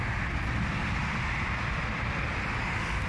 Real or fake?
real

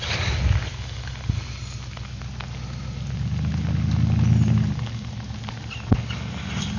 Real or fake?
real